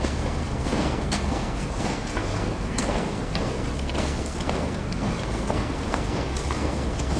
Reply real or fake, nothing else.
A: fake